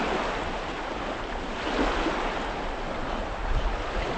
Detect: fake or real real